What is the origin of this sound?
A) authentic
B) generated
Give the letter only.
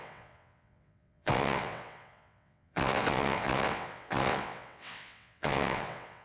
B